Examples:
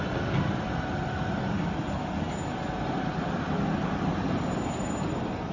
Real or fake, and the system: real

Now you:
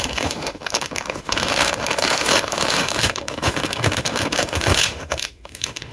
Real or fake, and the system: fake, autoencoder, DAC-VAE